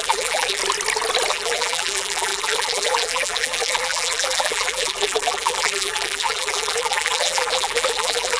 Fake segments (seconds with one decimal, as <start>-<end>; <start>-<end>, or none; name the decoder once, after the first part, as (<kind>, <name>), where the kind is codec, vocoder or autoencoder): 0.0-0.6 (vocoder, BigVGAN v2); 1.3-8.4